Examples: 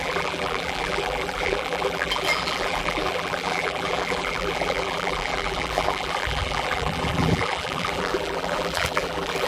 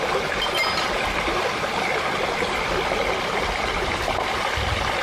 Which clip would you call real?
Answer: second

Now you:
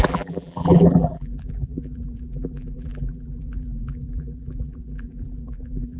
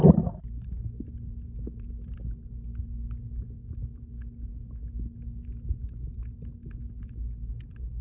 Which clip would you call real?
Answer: second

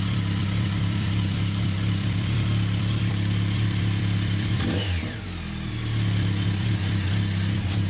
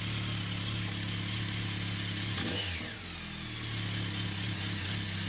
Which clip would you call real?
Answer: second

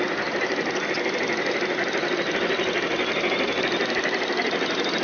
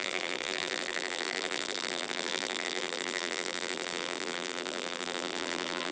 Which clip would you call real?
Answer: first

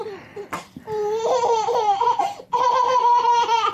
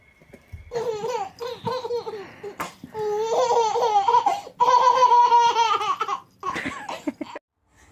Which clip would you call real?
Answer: second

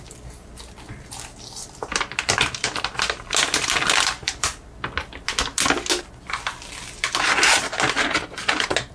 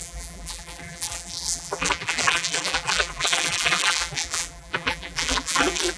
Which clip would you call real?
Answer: first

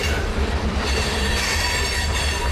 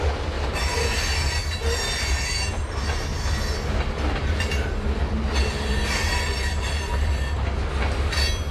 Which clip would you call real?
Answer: second